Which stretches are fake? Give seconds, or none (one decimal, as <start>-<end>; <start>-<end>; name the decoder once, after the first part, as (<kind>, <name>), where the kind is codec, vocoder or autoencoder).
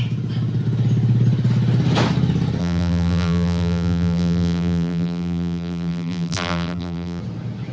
2.6-7.2 (vocoder, BigVGAN v2)